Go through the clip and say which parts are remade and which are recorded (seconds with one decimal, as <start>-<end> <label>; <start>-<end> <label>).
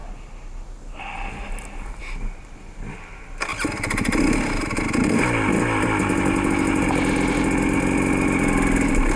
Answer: 0.0-9.2 recorded